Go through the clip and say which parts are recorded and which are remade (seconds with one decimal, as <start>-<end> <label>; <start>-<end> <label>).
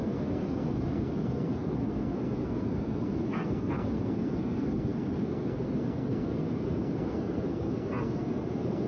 0.0-8.9 remade